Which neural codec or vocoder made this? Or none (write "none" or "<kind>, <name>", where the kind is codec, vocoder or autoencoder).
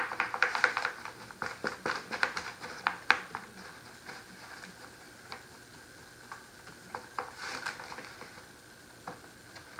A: none